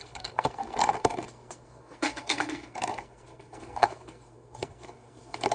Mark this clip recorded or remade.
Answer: remade